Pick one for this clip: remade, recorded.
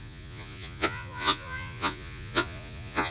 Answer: remade